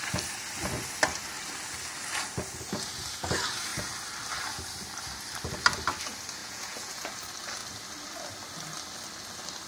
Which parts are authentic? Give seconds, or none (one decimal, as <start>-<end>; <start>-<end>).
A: 0.0-6.4; 7.1-9.7